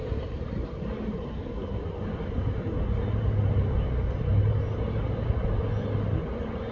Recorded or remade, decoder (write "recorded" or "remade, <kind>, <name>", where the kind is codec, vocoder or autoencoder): recorded